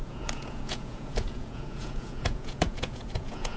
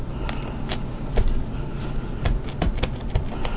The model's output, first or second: first